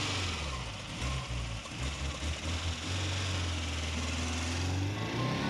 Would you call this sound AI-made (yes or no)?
no